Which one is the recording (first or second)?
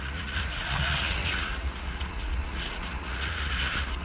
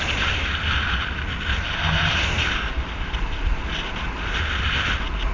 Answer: second